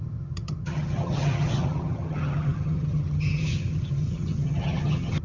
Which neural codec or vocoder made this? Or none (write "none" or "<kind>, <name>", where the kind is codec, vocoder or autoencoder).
vocoder, HiFi-GAN